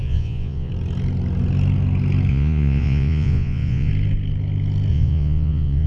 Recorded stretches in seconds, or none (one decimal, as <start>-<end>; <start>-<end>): 0.7-2.3; 3.9-4.9